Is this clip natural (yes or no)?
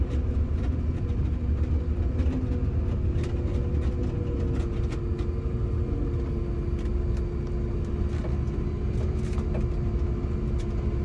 yes